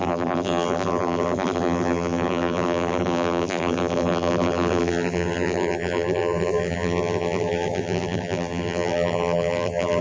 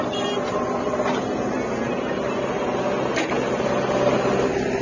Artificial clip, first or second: first